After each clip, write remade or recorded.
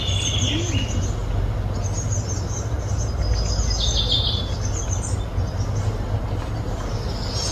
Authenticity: recorded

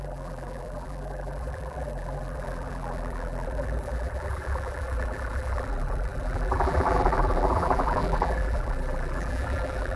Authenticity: remade